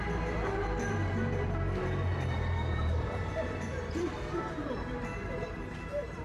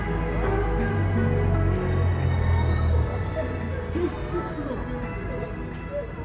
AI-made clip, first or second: first